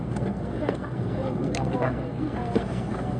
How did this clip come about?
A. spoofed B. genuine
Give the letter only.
A